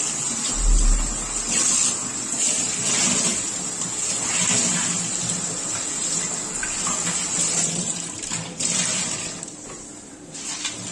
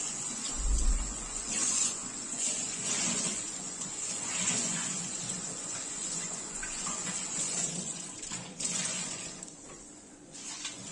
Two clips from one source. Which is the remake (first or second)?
second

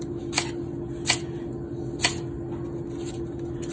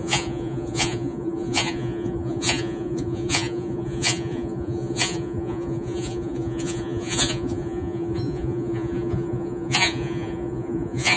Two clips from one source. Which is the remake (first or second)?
second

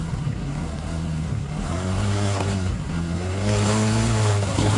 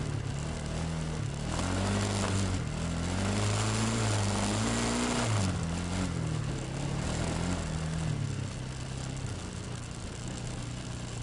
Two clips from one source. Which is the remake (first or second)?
first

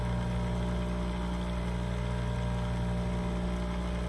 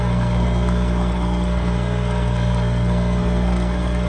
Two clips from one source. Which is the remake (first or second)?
second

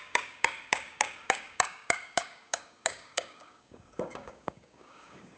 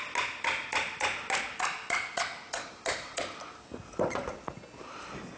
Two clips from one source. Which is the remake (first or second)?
first